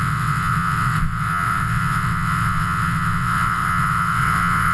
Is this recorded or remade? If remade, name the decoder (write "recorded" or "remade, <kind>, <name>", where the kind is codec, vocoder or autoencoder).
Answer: remade, vocoder, WaveNeXt